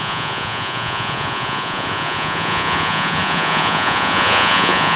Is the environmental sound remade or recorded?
remade